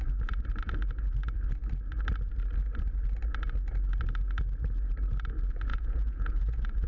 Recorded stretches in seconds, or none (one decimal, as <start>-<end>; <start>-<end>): 0.0-5.7